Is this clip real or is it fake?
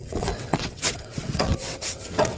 fake